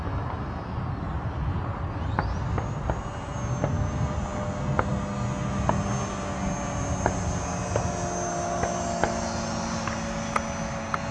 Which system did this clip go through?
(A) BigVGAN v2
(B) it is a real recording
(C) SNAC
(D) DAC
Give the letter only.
B